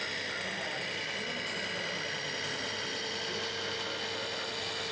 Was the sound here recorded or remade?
recorded